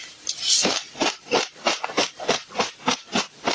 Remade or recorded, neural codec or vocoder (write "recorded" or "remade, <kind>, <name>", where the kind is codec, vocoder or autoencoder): remade, vocoder, BigVGAN v2